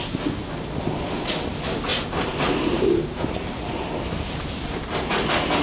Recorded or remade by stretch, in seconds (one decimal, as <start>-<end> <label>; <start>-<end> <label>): 0.0-1.9 recorded; 1.9-4.8 remade; 4.8-5.6 recorded